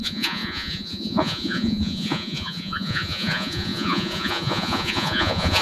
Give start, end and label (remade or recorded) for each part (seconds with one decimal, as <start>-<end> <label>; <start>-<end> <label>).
0.0-5.6 remade